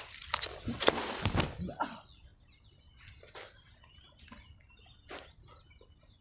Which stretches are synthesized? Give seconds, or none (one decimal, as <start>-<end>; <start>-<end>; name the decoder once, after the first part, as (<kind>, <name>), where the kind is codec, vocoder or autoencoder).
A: none